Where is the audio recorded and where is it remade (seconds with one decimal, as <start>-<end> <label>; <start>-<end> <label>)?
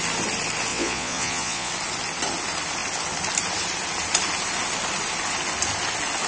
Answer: 0.0-0.7 recorded; 0.7-1.7 remade; 1.7-6.3 recorded